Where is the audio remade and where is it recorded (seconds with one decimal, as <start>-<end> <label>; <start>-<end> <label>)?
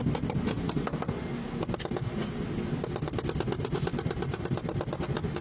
0.0-5.4 recorded